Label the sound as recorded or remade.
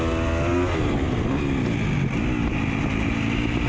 recorded